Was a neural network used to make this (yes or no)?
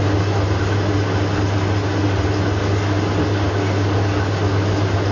no